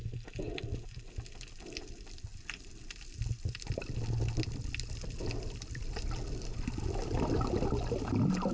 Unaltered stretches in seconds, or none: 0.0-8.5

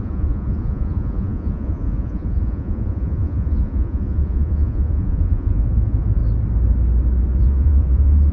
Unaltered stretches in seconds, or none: 6.2-7.4